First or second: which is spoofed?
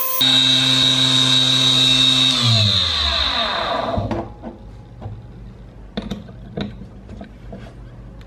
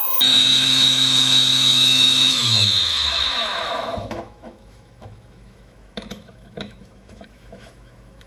second